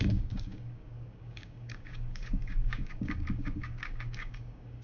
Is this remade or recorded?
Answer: remade